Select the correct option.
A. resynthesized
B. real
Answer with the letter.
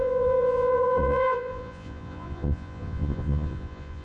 A